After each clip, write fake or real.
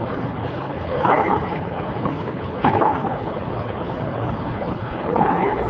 fake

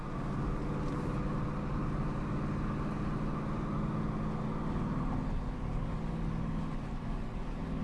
real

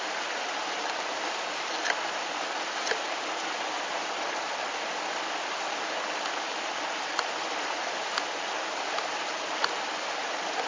real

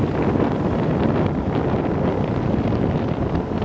real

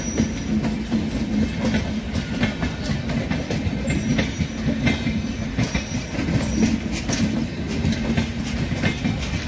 real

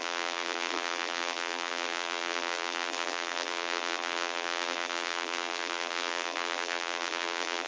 fake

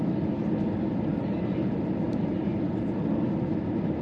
real